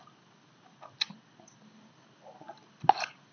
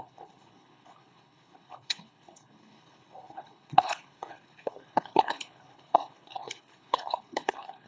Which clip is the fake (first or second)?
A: second